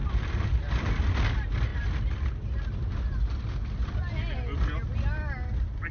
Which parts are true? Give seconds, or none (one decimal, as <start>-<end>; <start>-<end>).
1.0-5.9